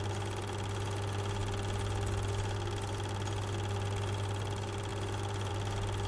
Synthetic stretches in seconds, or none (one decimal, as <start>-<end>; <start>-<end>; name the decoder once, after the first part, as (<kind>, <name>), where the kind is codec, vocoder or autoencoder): none